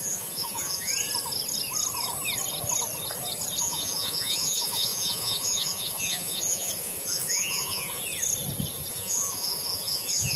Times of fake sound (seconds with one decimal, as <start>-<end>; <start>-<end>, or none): 0.0-0.9; 3.6-8.0; 8.9-10.4